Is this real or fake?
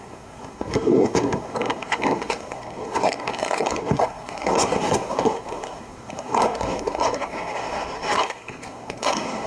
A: fake